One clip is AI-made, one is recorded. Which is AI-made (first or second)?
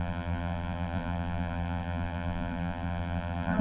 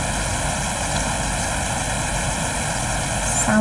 first